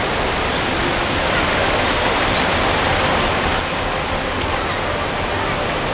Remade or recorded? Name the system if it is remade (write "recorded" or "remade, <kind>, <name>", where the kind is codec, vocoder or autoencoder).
recorded